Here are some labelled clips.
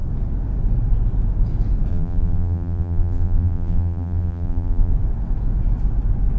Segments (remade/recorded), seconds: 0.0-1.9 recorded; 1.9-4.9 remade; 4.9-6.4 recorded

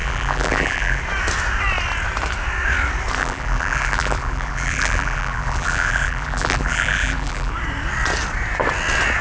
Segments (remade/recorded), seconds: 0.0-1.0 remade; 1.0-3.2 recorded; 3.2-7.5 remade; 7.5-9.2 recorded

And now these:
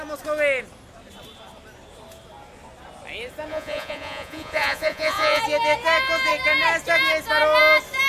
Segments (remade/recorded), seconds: 0.0-3.5 recorded; 3.5-5.4 remade; 5.4-8.1 recorded